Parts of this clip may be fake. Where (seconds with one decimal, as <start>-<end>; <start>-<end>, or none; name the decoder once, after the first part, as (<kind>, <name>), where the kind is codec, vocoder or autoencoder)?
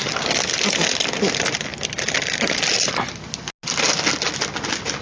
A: none